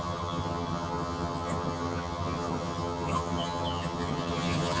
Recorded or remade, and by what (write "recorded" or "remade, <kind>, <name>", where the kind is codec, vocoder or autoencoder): remade, vocoder, HiFi-GAN